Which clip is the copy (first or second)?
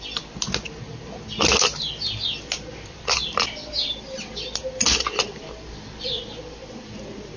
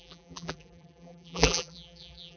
second